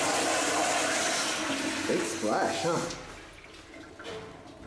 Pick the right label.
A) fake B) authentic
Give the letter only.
B